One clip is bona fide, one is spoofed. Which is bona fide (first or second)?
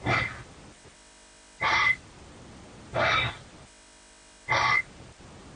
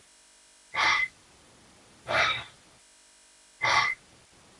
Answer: first